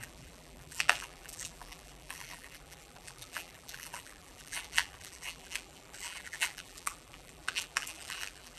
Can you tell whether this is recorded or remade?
remade